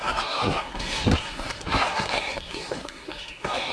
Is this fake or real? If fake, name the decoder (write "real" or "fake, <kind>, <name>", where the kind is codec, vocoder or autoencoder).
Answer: fake, codec, SNAC